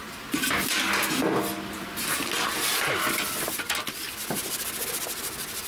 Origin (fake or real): real